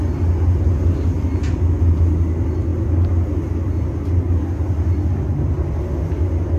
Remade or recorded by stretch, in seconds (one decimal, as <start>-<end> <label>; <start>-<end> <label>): 0.0-6.6 recorded